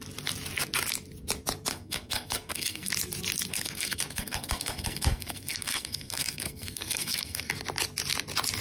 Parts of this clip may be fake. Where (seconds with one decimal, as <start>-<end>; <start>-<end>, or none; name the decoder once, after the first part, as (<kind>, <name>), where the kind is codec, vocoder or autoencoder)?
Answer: 1.7-2.9 (codec, SNAC); 3.5-7.5